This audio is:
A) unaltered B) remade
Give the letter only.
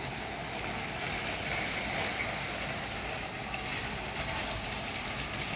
A